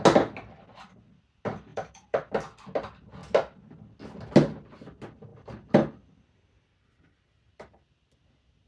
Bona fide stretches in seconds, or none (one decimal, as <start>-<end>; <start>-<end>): 0.0-1.7; 2.3-5.3; 6.7-8.7